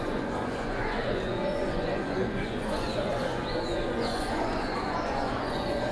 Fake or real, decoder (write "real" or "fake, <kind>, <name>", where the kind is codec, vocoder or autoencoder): fake, vocoder, Vocos